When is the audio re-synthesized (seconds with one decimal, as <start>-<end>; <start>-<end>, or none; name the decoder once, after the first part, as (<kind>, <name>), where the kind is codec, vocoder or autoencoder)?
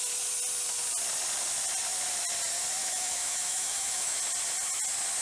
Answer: 2.8-4.2 (autoencoder, DAC-VAE)